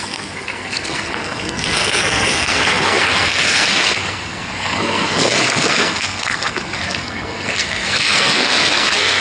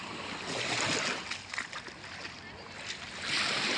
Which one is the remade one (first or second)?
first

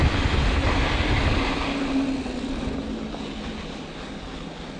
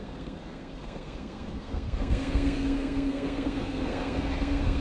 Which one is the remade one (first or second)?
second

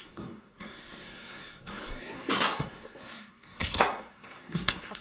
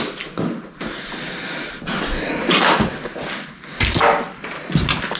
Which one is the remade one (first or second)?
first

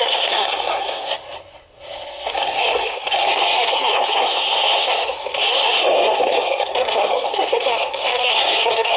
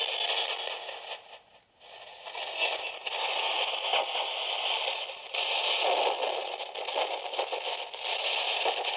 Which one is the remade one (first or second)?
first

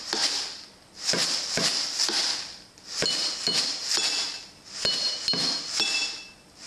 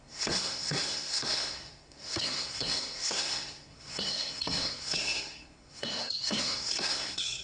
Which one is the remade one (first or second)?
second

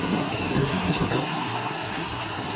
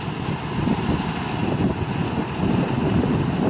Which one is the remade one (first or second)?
first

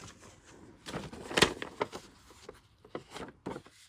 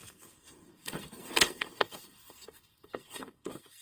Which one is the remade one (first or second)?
second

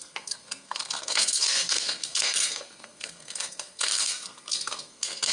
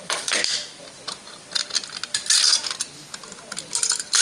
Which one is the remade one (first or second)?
first